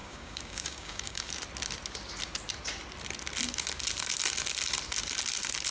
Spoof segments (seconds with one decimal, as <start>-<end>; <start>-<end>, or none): 0.0-1.3